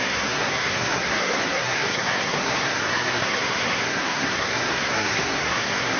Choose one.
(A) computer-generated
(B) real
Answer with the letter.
A